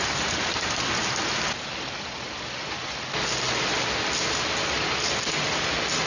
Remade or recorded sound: recorded